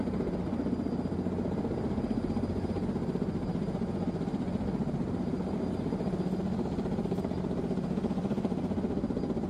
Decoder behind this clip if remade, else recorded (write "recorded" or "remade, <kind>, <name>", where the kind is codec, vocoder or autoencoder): recorded